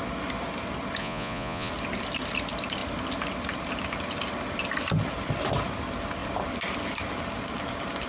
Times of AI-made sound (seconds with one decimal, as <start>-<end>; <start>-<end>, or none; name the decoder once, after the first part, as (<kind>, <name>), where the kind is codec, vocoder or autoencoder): 1.0-1.7 (vocoder, Vocos)